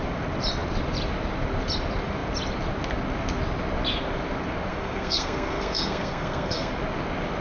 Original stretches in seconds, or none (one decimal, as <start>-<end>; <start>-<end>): 0.0-4.7; 6.7-7.4